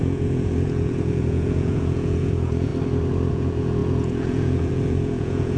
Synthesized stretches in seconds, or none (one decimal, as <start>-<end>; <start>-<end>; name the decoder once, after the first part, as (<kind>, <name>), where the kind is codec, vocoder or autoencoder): 0.0-2.7 (vocoder, Vocos); 3.3-5.6